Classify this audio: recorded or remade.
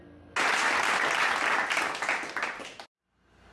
recorded